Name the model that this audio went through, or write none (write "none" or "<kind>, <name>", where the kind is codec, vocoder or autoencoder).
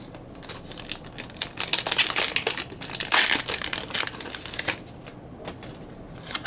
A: none